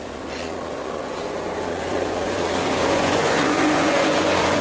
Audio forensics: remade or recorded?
remade